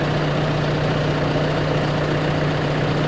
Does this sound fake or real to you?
fake